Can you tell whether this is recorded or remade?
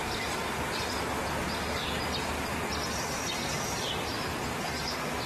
recorded